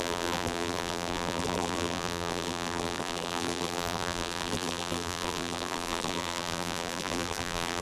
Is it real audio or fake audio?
fake